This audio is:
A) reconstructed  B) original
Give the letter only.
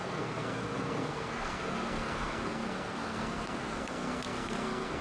A